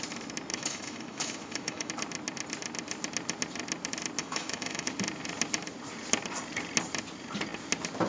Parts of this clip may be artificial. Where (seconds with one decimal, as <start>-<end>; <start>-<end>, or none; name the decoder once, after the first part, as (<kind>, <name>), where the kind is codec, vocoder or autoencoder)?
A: 0.5-1.9 (autoencoder, DAC-VAE); 4.2-4.9